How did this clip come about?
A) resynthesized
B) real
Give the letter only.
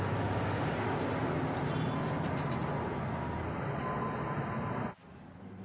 B